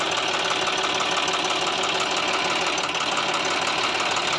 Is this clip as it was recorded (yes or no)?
yes